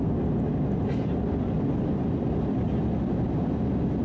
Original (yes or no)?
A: yes